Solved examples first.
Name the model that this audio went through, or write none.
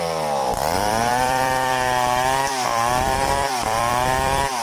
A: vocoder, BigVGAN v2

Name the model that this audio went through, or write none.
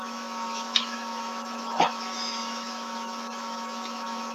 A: autoencoder, DAC-VAE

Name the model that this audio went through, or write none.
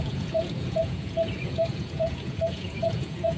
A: vocoder, Vocos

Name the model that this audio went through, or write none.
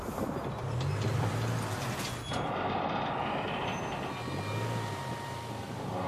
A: none